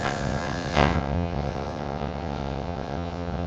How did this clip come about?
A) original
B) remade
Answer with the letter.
B